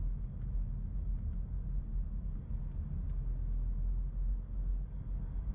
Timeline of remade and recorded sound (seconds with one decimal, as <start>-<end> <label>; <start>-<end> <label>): 0.0-4.7 recorded; 4.7-5.5 remade

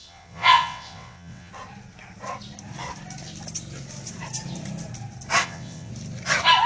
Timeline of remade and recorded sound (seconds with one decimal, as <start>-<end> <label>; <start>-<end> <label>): 0.0-1.5 remade; 1.5-5.4 recorded; 5.4-5.9 remade; 5.9-6.7 recorded